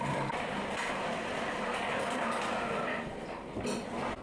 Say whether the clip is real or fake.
real